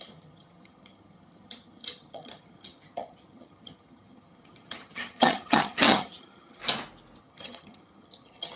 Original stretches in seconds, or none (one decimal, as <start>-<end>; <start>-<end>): 6.6-7.2